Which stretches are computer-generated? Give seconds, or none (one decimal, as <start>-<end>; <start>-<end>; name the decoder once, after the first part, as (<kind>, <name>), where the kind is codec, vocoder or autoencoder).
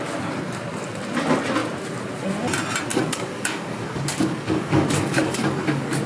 2.9-6.1 (codec, DAC)